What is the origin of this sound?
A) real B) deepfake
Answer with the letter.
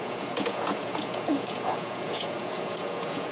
B